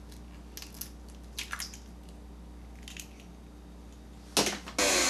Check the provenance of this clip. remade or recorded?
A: recorded